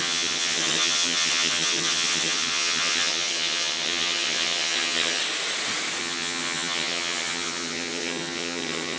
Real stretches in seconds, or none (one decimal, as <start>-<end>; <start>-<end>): 5.2-6.0